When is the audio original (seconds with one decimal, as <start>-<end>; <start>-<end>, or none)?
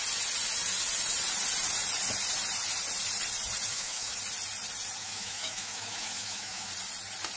0.0-3.7; 4.2-5.0; 6.7-7.4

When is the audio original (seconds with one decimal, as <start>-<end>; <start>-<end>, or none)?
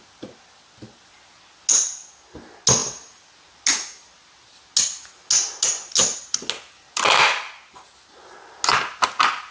0.0-9.5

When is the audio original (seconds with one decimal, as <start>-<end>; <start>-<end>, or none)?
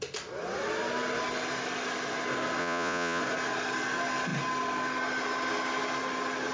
0.0-2.6; 3.2-6.5